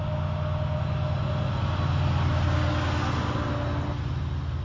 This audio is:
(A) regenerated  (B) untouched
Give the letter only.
B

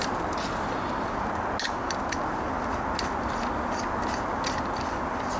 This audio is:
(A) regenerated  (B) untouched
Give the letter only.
B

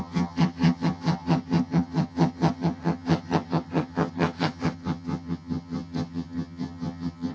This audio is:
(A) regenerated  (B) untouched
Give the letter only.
A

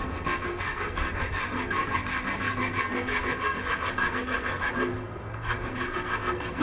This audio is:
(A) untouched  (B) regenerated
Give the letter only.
B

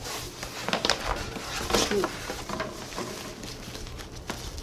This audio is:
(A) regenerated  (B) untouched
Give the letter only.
B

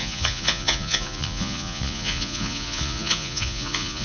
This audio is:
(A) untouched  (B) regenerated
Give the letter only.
B